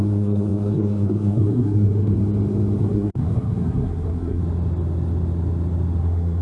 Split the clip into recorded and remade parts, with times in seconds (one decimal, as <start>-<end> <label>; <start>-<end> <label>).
0.0-2.2 remade; 2.2-2.8 recorded; 2.8-4.4 remade; 4.4-6.0 recorded; 6.0-6.4 remade